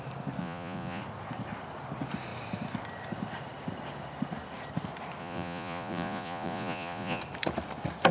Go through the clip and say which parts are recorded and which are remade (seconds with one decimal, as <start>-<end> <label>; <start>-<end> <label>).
0.0-0.4 recorded; 0.4-1.0 remade; 1.0-5.2 recorded; 5.2-7.2 remade; 7.2-8.1 recorded